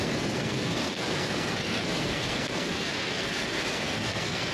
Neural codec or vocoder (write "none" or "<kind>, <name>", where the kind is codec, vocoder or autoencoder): codec, SNAC